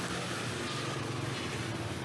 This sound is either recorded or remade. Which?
recorded